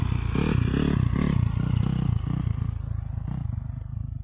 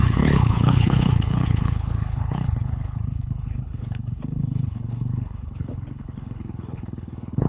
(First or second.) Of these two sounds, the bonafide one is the first